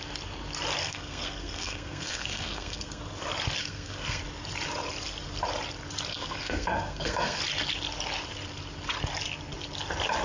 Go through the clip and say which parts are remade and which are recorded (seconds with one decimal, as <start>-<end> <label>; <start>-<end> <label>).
0.0-0.8 recorded; 0.8-3.0 remade; 3.0-3.6 recorded; 3.6-4.2 remade; 4.2-6.1 recorded; 6.1-7.4 remade; 7.4-10.2 recorded